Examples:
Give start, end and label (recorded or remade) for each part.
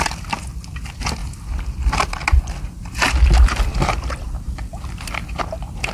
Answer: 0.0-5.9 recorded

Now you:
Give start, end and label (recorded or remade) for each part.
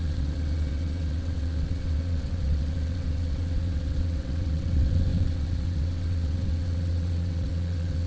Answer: 0.0-8.1 remade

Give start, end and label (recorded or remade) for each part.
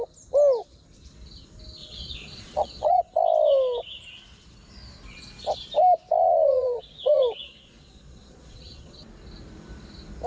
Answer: 0.0-1.8 recorded; 1.8-3.0 remade; 3.0-6.2 recorded; 6.2-9.1 remade; 9.1-10.3 recorded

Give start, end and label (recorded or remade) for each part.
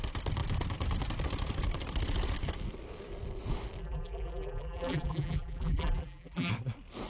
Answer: 0.0-3.8 recorded; 3.8-6.5 remade; 6.5-7.1 recorded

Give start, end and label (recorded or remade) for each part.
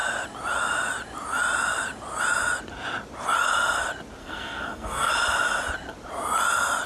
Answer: 0.0-4.2 recorded; 4.2-5.1 remade; 5.1-6.9 recorded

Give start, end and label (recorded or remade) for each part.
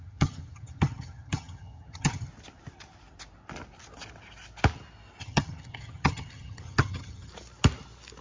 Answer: 0.0-2.3 remade; 2.3-5.2 recorded; 5.2-7.3 remade; 7.3-8.2 recorded